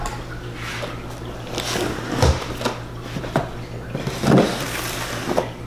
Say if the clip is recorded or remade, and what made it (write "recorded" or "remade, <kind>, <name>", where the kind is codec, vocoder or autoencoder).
recorded